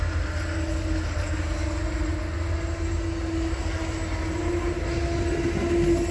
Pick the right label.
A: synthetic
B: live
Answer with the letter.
B